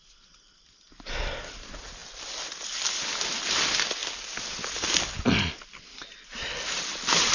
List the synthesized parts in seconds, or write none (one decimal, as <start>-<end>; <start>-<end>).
none